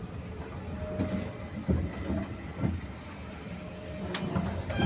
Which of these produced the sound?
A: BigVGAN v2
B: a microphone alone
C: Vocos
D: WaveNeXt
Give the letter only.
B